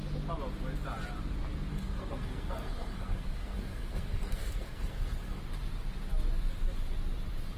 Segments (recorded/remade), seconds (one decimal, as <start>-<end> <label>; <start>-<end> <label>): 0.0-1.7 recorded; 1.7-5.4 remade; 5.4-7.6 recorded